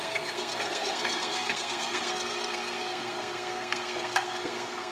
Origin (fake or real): fake